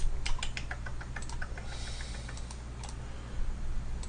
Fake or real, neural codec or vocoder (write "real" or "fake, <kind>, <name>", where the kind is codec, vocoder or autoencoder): real